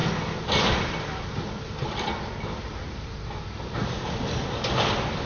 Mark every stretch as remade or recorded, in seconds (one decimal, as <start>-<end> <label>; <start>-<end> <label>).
0.0-5.3 recorded